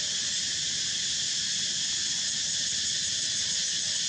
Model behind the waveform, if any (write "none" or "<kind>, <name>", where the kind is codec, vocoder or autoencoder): none